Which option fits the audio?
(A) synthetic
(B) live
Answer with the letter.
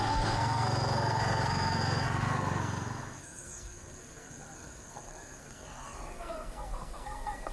A